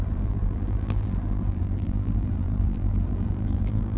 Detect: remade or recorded remade